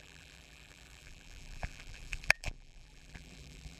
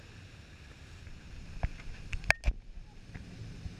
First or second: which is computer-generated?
first